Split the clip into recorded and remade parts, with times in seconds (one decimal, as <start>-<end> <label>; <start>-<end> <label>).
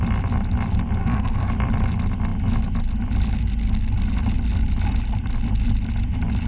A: 0.0-1.0 recorded; 1.0-1.5 remade; 1.5-6.5 recorded